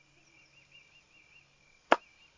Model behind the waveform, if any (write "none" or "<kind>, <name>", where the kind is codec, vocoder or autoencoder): none